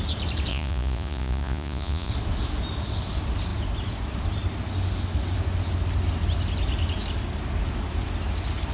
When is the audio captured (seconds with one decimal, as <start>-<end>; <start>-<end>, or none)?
0.0-0.5; 2.1-8.7